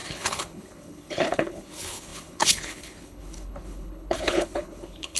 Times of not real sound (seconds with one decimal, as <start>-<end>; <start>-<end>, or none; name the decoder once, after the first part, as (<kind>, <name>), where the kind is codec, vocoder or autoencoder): 0.0-5.2 (codec, HILCodec)